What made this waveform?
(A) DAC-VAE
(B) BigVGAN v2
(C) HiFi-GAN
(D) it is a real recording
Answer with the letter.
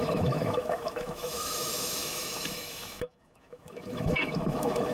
A